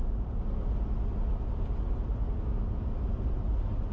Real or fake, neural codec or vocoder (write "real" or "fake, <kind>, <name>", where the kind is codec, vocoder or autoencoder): real